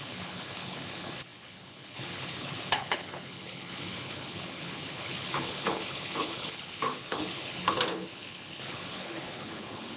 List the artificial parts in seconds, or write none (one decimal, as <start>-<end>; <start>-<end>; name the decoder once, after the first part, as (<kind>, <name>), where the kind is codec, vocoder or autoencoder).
0.0-10.0 (codec, HILCodec)